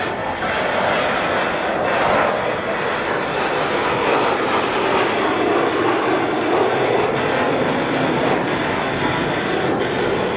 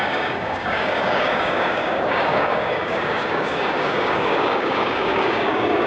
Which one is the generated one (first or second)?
second